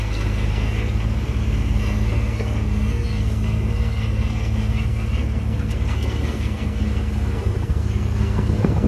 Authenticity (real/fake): fake